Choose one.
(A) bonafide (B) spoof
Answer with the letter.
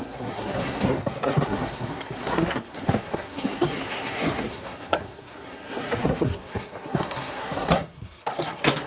B